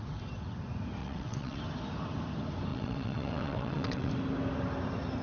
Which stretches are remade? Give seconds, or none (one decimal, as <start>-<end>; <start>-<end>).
1.0-1.6; 2.7-4.1

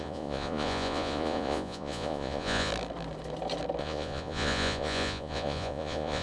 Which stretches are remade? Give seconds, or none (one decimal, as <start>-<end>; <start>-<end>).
0.0-2.7; 3.8-6.2

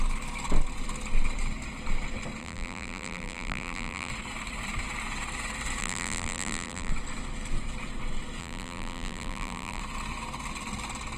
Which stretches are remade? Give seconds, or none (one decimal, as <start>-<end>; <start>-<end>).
2.4-4.1; 5.8-6.9; 8.4-9.8